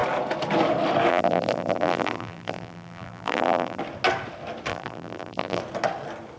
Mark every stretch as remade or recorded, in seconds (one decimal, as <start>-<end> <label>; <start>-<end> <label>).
0.0-1.1 recorded; 1.1-3.8 remade; 3.8-4.7 recorded; 4.7-5.6 remade; 5.6-6.4 recorded